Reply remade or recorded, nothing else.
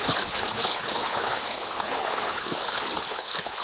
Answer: remade